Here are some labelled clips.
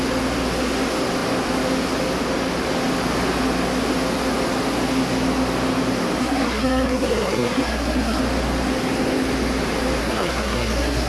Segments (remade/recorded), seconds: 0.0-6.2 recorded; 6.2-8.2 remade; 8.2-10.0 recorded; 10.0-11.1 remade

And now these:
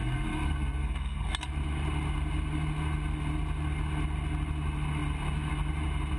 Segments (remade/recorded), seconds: 0.0-1.3 remade; 1.3-6.2 recorded

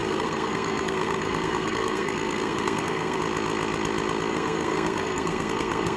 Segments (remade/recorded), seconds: 0.0-3.2 remade; 3.2-4.3 recorded; 4.3-6.0 remade

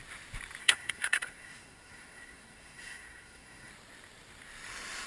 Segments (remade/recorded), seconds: 0.0-0.6 recorded; 0.6-3.7 remade; 3.7-5.1 recorded

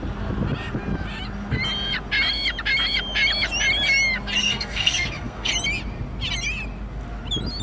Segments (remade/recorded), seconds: 0.0-4.4 recorded; 4.4-5.5 remade; 5.5-7.6 recorded

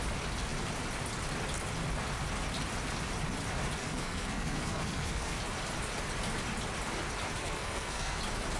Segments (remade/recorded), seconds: 0.0-3.8 recorded; 3.8-5.4 remade; 5.4-7.4 recorded; 7.4-8.2 remade; 8.2-8.6 recorded

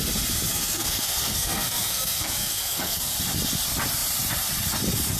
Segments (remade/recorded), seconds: 0.0-0.5 recorded; 0.5-3.1 remade; 3.1-5.2 recorded